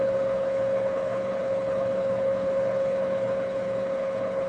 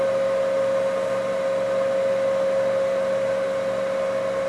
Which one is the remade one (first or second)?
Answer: first